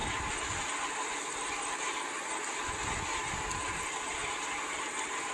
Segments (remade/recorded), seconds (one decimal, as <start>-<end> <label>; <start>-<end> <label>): 0.0-5.3 recorded